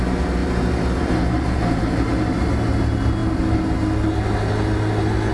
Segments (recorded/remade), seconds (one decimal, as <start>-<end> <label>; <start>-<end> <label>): 0.0-5.3 recorded